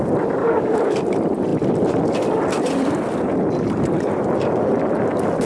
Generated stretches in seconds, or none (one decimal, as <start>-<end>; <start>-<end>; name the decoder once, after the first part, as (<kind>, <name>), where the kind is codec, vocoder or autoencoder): 0.4-1.0 (codec, DAC)